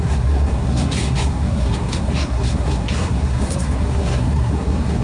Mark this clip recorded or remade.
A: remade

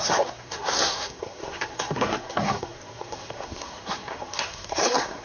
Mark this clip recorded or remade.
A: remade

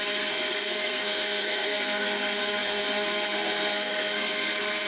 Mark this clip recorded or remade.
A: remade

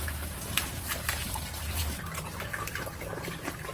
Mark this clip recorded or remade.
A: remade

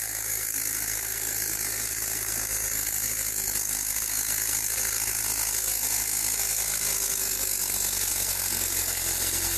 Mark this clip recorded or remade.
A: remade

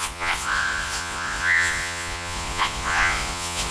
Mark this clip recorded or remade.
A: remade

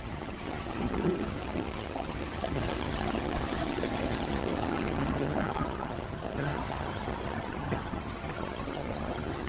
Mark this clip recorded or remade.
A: remade